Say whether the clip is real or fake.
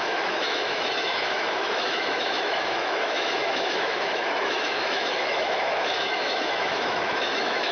fake